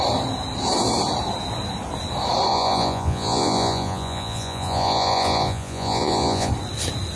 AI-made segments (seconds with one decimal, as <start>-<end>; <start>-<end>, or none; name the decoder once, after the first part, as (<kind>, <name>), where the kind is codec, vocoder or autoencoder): 2.5-6.5 (vocoder, Vocos)

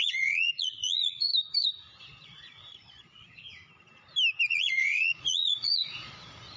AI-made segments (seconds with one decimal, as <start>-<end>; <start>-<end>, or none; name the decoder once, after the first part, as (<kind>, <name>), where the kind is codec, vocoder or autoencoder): 0.0-1.3 (vocoder, Vocos); 2.0-3.4; 4.5-6.6

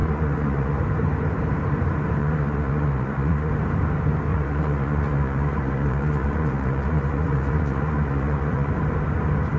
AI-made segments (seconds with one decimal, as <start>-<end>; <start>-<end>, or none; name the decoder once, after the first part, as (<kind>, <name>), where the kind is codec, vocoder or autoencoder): 0.0-0.8 (vocoder, Vocos); 2.2-3.5; 4.3-8.7

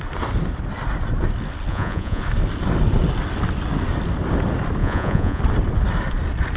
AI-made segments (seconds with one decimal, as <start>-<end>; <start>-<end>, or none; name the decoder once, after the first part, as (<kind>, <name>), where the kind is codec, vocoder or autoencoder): 1.7-2.2 (vocoder, Vocos); 4.8-5.4

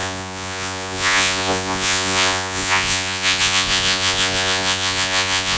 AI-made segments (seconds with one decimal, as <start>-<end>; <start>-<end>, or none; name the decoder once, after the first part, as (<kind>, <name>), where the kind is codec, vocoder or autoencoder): 0.0-5.6 (vocoder, Vocos)